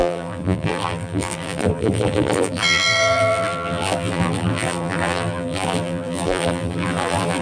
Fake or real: fake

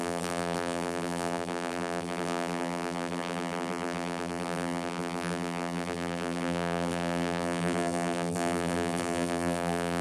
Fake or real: fake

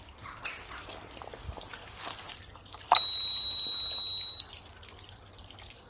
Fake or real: real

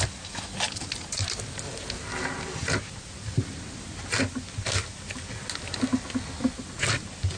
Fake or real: real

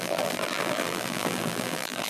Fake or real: fake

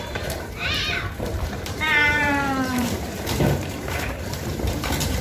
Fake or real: fake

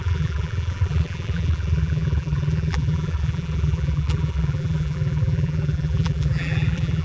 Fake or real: fake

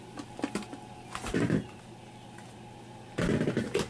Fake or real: real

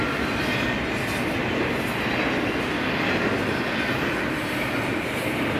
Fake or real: real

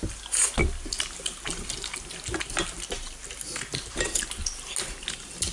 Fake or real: real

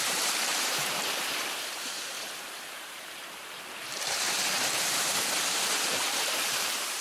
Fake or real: fake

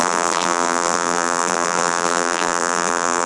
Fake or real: fake